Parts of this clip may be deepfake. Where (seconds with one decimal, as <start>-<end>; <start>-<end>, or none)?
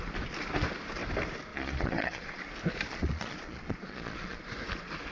1.5-2.4; 2.9-4.4